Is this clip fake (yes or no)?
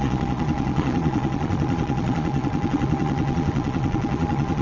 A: yes